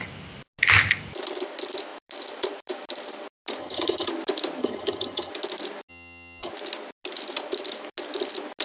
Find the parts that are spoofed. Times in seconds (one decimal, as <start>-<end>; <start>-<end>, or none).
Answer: 3.6-4.1; 4.6-5.3; 5.9-6.5